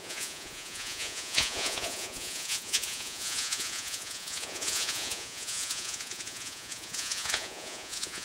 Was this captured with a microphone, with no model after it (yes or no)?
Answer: no